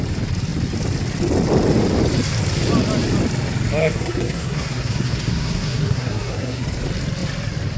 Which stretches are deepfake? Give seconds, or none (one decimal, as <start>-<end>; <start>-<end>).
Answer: 3.8-6.6